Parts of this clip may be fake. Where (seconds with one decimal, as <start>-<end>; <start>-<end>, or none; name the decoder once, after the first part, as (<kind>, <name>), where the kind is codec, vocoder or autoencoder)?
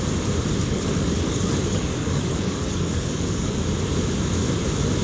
0.6-3.6 (codec, DAC)